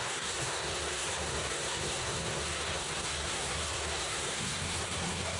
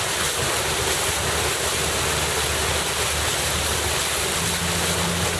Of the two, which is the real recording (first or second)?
second